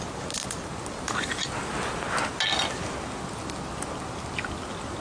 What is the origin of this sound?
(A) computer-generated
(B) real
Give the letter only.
B